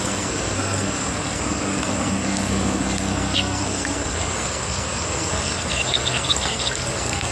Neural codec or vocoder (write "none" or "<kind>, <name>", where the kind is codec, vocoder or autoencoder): codec, SNAC